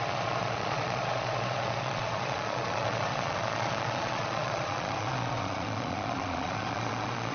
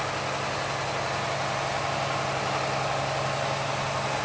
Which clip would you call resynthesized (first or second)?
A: first